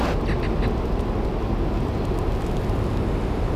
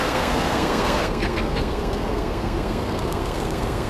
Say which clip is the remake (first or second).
second